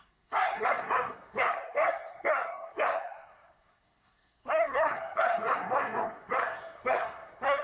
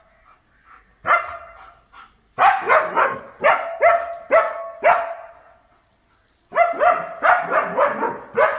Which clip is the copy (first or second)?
first